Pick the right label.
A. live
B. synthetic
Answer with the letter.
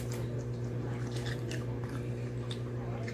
B